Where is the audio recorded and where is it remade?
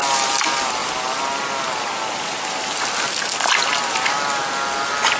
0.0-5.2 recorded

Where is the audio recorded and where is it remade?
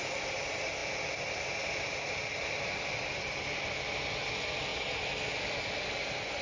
0.0-6.4 recorded